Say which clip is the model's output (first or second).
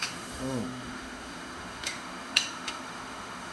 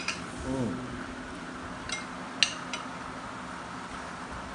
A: first